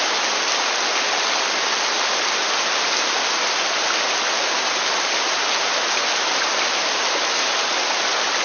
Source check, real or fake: real